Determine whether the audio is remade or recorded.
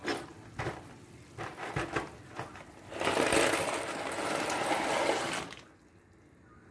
recorded